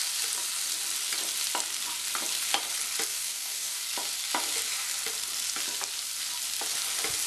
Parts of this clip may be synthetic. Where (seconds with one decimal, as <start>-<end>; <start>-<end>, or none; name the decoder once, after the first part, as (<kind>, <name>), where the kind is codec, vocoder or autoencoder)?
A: 3.1-3.8 (codec, DAC)